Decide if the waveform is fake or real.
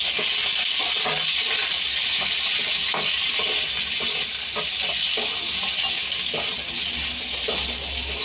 real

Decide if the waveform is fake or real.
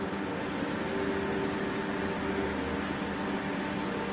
real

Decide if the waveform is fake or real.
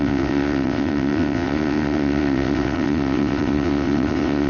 fake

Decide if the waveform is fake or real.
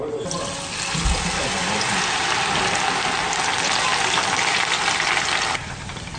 real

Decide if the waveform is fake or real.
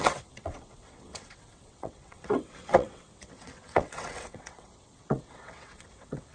fake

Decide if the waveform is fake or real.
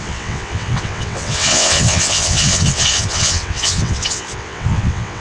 fake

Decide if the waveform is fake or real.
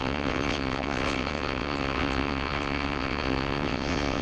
fake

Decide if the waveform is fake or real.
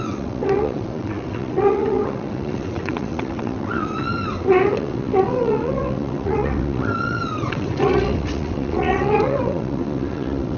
fake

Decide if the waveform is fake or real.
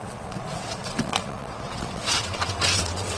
fake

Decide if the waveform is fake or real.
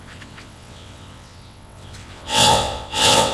fake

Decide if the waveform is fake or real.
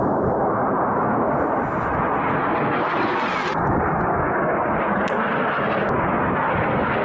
real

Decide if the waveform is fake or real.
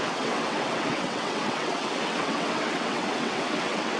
fake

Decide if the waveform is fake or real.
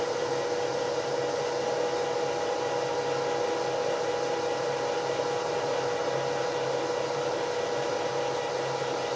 real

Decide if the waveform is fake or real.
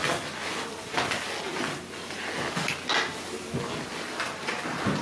real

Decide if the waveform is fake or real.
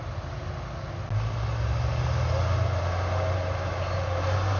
real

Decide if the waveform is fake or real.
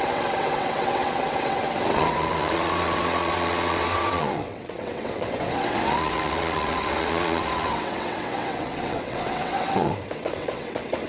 fake